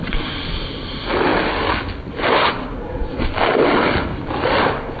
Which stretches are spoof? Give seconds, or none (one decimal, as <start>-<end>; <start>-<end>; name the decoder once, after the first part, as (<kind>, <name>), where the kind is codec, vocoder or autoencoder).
none